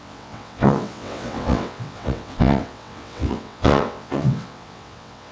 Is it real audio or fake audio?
fake